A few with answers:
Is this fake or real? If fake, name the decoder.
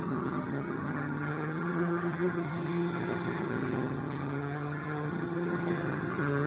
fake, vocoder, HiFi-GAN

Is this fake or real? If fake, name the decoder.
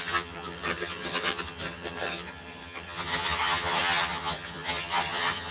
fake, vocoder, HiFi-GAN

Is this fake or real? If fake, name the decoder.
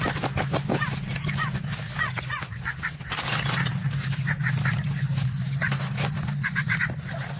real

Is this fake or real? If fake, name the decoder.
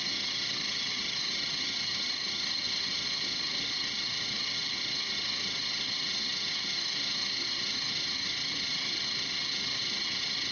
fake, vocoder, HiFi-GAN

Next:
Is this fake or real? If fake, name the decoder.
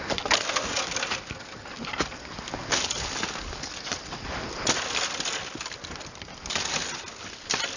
real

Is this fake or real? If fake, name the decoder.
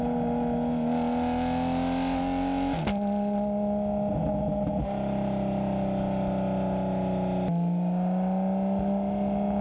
real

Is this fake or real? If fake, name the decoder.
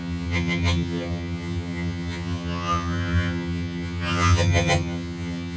fake, vocoder, HiFi-GAN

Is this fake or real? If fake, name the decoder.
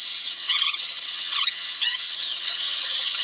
fake, vocoder, HiFi-GAN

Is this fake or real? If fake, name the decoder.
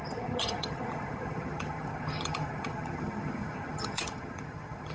fake, vocoder, HiFi-GAN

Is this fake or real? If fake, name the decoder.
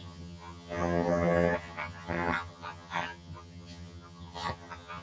fake, vocoder, HiFi-GAN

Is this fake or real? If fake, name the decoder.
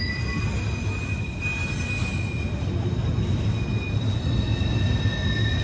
real